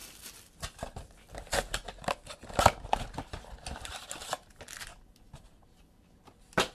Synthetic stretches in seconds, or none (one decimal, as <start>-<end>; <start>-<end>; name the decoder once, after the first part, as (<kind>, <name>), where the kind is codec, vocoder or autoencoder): none